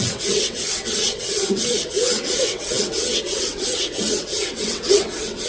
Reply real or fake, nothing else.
fake